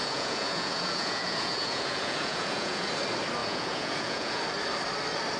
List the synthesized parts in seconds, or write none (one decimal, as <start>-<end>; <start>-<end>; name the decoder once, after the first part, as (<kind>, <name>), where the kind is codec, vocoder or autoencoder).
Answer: 0.0-2.9 (vocoder, Vocos); 3.4-4.4